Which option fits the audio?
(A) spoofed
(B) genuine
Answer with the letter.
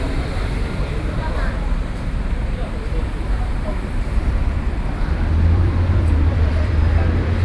A